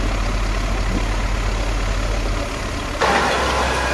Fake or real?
real